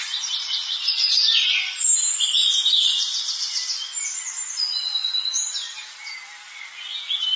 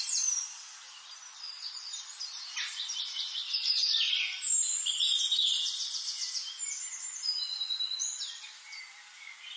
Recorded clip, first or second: first